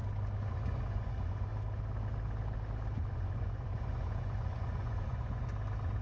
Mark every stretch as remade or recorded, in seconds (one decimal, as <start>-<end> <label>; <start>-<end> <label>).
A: 0.0-0.5 recorded; 0.5-1.5 remade; 1.5-3.1 recorded; 3.1-5.5 remade; 5.5-6.0 recorded